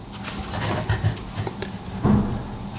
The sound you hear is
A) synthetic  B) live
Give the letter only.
B